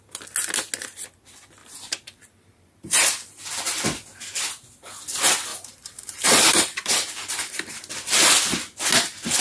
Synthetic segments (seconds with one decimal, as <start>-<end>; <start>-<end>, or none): 1.6-3.4; 5.5-7.8